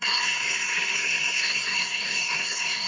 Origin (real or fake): fake